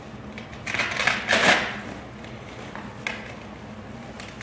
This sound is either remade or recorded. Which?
recorded